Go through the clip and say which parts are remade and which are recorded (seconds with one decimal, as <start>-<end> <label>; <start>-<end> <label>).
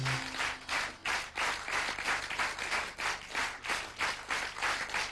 0.0-5.1 recorded